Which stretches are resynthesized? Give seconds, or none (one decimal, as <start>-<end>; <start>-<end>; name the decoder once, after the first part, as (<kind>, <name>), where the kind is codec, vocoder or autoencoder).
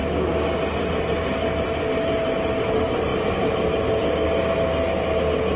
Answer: none